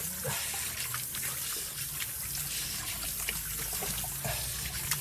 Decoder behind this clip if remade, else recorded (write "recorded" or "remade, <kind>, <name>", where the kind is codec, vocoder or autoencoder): recorded